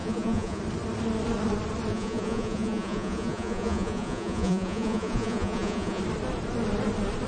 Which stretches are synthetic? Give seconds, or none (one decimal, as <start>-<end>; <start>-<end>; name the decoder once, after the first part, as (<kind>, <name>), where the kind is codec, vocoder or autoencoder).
0.0-0.6 (vocoder, Vocos); 1.9-6.0